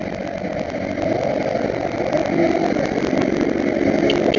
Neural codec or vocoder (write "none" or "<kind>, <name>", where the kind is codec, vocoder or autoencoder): none